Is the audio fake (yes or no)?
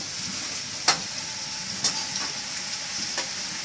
no